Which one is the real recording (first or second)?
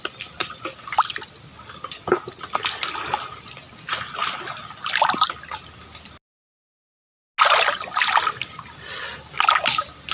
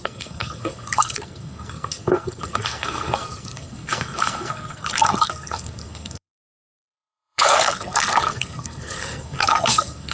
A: first